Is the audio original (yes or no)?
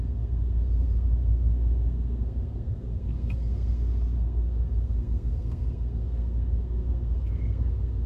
no